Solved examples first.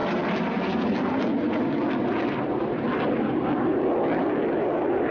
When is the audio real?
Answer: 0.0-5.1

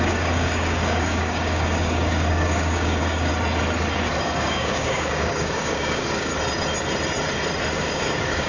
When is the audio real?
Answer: 3.3-4.2; 6.3-7.8

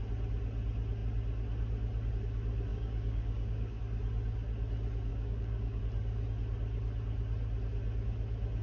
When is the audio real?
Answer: 0.0-2.7; 3.8-5.1; 5.8-8.6